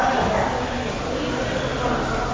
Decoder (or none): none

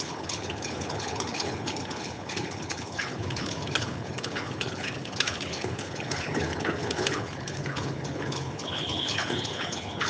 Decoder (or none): codec, HILCodec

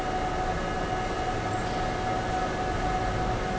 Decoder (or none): none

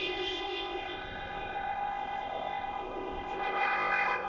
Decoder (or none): codec, ZipCodec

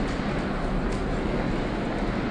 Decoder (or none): none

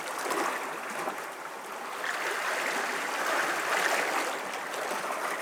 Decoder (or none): none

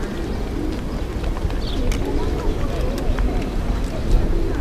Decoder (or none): none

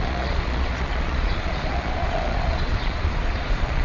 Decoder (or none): vocoder, Vocos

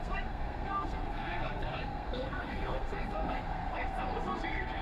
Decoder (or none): codec, SNAC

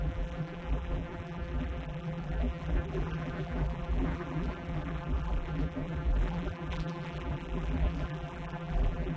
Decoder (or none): vocoder, BigVGAN v2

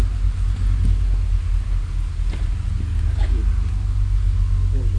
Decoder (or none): none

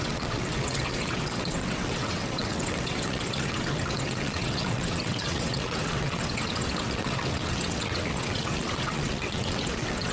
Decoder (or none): vocoder, WaveNeXt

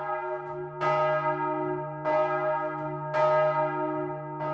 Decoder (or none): none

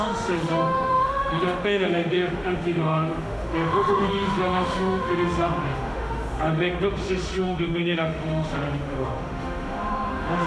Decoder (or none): autoencoder, DAC-VAE